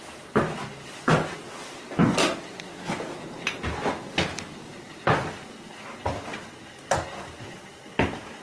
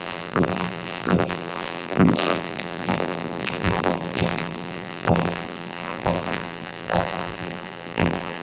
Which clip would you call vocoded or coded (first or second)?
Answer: second